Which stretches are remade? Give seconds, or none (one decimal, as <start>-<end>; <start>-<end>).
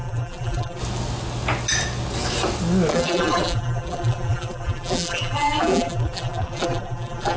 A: 0.0-0.8; 2.9-7.4